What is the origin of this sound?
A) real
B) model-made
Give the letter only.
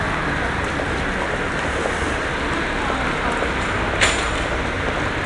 A